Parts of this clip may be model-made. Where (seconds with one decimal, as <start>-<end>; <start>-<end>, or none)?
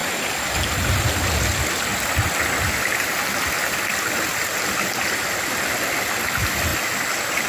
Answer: 0.0-1.1; 1.9-4.9; 6.7-7.5